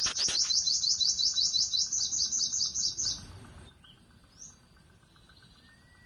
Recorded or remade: recorded